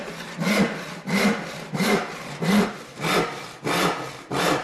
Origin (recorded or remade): recorded